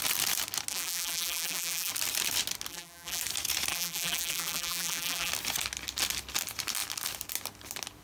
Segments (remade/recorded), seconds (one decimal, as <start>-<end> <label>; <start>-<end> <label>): 0.0-0.7 recorded; 0.7-1.9 remade; 1.9-2.7 recorded; 2.7-3.2 remade; 3.2-3.7 recorded; 3.7-5.3 remade; 5.3-8.0 recorded